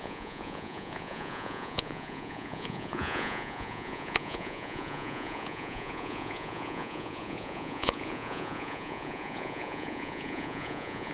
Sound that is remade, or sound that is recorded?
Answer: remade